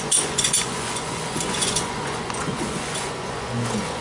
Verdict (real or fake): fake